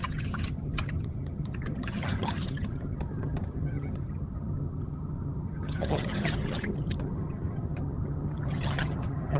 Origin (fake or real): fake